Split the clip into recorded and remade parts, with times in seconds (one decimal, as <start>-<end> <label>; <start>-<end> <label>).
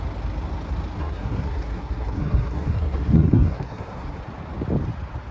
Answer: 0.0-1.0 recorded; 1.0-4.2 remade; 4.2-5.3 recorded